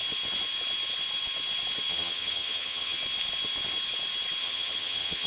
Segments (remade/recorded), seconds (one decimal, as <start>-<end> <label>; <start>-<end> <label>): 0.0-1.9 recorded; 1.9-3.0 remade; 3.0-4.4 recorded; 4.4-5.3 remade